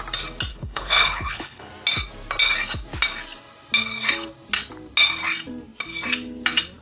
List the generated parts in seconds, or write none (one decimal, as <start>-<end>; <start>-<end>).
0.5-1.7